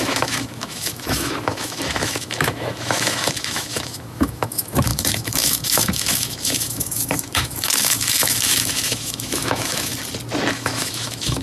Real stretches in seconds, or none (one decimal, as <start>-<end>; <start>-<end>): 9.9-10.5